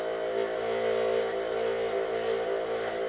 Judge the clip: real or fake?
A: real